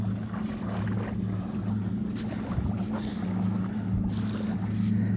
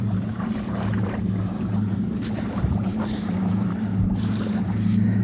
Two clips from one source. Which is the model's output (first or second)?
second